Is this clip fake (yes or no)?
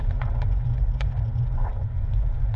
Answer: yes